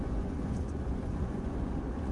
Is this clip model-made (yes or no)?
yes